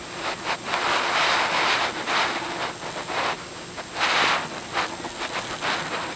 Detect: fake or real real